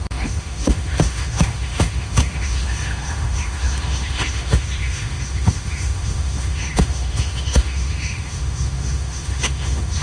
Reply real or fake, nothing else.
fake